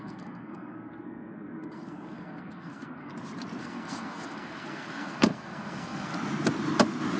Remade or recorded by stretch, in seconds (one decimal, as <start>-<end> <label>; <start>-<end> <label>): 0.0-3.1 remade; 3.1-3.6 recorded; 3.6-6.1 remade; 6.1-7.2 recorded

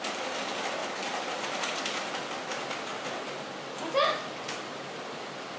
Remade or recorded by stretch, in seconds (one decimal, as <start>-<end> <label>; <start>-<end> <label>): 0.0-5.6 recorded

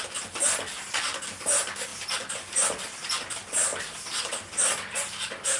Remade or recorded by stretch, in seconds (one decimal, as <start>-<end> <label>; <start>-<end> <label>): 0.0-5.6 recorded

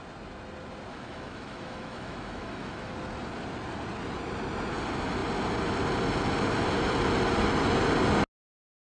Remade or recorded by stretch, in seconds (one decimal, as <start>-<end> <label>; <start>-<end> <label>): 0.0-0.9 recorded; 0.9-2.9 remade; 2.9-8.9 recorded

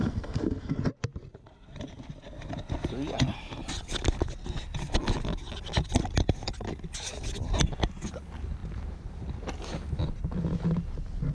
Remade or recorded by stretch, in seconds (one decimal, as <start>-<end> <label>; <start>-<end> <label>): 0.0-0.8 remade; 0.8-11.3 recorded

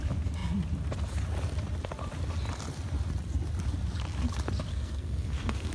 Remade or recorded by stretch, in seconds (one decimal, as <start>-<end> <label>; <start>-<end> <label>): 0.0-4.7 recorded; 4.7-5.7 remade

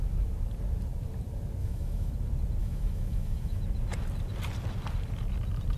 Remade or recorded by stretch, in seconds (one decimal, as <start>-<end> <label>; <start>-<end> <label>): 0.0-1.6 recorded; 1.6-2.1 remade; 2.1-2.6 recorded; 2.6-3.6 remade; 3.6-5.8 recorded

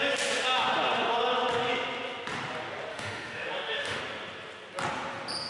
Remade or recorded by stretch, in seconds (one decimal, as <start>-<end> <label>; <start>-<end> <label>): 0.0-2.9 recorded; 2.9-4.0 remade; 4.0-5.5 recorded